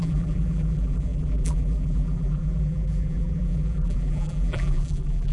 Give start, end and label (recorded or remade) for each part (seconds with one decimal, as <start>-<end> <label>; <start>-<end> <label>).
0.0-5.3 remade